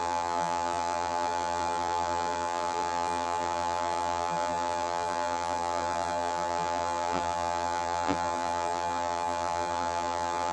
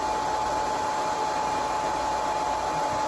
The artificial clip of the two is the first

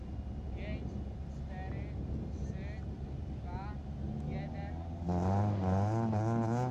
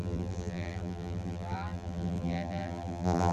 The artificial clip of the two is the second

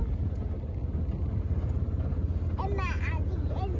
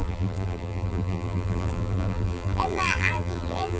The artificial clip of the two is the second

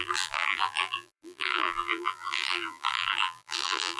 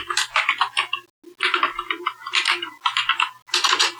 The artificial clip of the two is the first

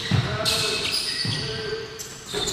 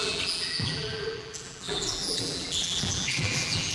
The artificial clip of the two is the second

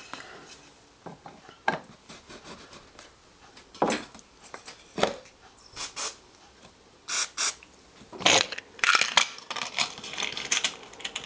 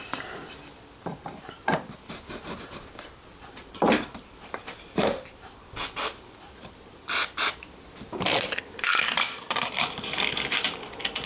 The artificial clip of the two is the second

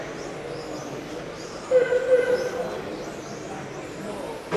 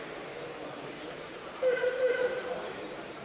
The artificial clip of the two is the second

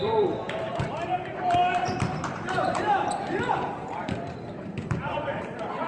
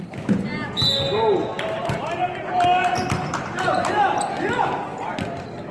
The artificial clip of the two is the first